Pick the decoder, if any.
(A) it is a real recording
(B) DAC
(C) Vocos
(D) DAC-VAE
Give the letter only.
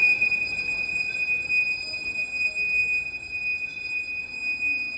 A